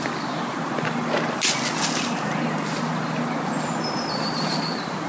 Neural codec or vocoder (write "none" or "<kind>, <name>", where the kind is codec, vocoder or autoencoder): none